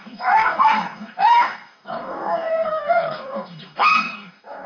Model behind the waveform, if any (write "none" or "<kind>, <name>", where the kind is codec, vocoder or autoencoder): codec, DAC